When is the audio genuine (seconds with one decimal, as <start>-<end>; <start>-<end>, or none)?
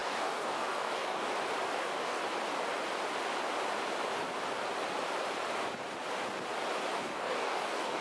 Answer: 1.3-1.8; 2.2-7.0